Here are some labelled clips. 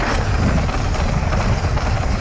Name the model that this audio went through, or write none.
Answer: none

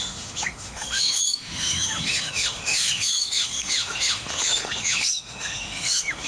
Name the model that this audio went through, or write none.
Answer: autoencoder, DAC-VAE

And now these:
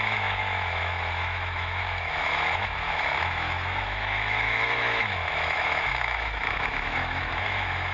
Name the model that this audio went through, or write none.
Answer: autoencoder, DAC-VAE